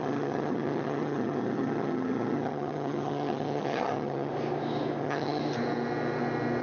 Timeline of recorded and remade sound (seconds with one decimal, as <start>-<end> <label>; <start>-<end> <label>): 0.0-4.3 remade; 4.3-5.0 recorded; 5.0-5.4 remade; 5.4-6.6 recorded